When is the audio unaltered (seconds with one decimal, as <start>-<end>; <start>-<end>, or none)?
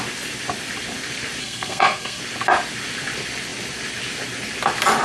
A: 0.0-1.4; 2.2-5.0